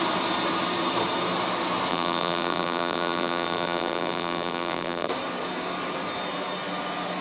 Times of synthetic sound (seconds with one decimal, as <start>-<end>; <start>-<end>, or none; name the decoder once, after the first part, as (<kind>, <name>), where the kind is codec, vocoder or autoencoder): 1.9-5.1 (vocoder, BigVGAN v2)